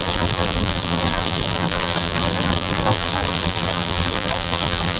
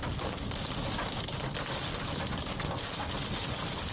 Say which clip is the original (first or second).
second